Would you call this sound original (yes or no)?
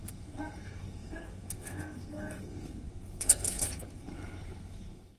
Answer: no